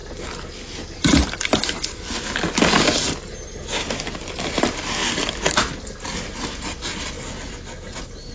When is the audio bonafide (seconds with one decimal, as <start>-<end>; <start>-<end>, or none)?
0.0-8.3